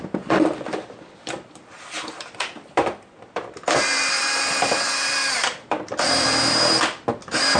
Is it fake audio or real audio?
fake